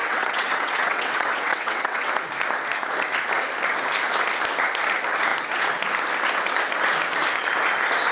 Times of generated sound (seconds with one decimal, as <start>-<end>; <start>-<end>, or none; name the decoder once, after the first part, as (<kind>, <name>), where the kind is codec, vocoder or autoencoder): 0.0-2.1 (vocoder, WaveNeXt)